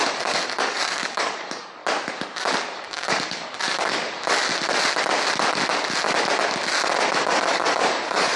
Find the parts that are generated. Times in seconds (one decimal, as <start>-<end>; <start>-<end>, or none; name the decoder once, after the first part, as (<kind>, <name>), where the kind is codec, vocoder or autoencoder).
0.0-1.8 (codec, DAC); 2.8-4.0; 7.2-8.4